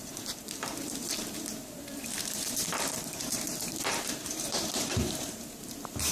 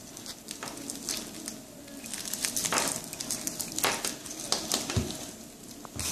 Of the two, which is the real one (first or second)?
second